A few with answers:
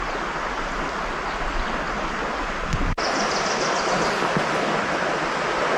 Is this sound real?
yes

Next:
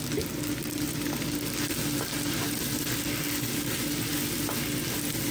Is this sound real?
yes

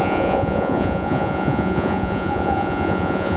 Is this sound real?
no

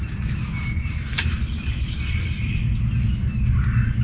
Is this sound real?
yes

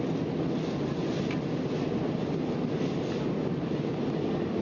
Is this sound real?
yes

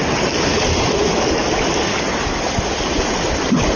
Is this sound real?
yes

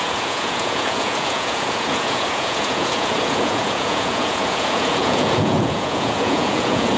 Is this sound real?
no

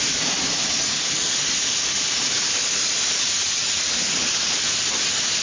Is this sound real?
yes